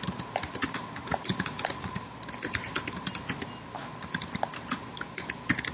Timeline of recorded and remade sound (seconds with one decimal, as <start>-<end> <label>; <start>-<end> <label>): 0.0-5.7 recorded